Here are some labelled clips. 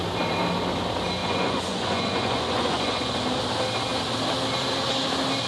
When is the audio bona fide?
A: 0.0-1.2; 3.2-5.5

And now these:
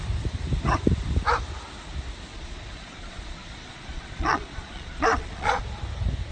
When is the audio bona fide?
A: 0.0-2.3; 5.6-6.3

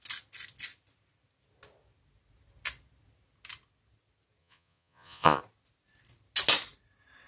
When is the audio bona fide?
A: 0.0-4.4; 5.4-7.3

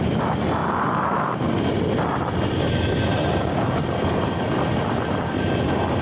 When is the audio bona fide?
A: 0.0-6.0

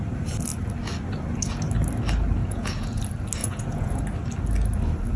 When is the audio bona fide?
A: 0.0-2.4; 3.0-3.4; 4.0-5.2

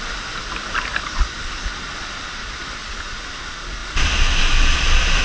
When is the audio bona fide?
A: 0.0-2.8; 3.4-5.2